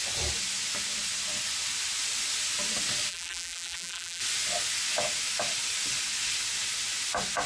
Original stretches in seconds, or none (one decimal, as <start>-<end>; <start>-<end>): 0.0-3.1; 4.2-7.5